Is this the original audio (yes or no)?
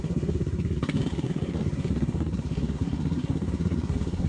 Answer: no